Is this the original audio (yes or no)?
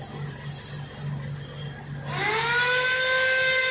yes